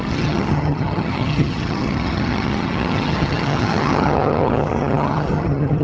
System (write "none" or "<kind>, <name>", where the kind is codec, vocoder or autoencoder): vocoder, HiFi-GAN